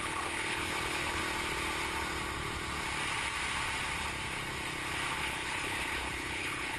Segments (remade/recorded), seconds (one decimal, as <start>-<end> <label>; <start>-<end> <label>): 0.0-1.2 remade; 1.2-5.2 recorded; 5.2-6.8 remade